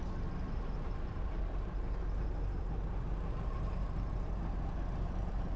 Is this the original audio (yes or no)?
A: no